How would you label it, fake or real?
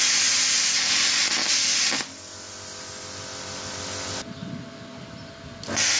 real